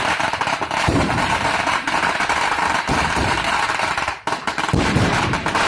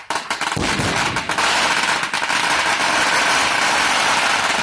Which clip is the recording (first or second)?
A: second